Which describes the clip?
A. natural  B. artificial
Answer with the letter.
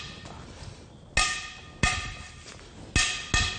A